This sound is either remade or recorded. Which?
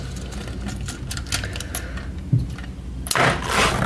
recorded